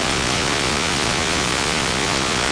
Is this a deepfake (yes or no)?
yes